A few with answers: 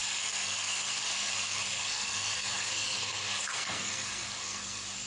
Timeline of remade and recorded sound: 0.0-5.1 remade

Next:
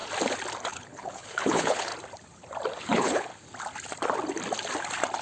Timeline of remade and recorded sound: 0.0-0.7 recorded; 0.7-1.9 remade; 1.9-2.8 recorded; 2.8-3.3 remade; 3.3-5.2 recorded

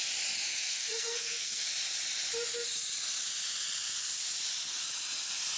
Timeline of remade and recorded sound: 0.0-0.5 recorded; 0.5-1.7 remade; 1.7-5.6 recorded

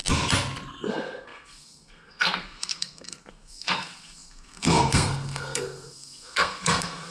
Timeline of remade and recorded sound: 0.0-0.9 recorded; 0.9-7.1 remade

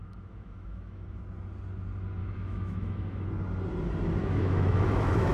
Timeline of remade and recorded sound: 0.0-1.2 remade; 1.2-2.2 recorded; 2.2-3.3 remade; 3.3-4.2 recorded; 4.2-5.3 remade

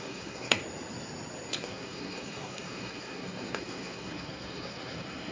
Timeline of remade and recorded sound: 0.0-0.6 remade; 0.6-1.5 recorded; 1.5-5.3 remade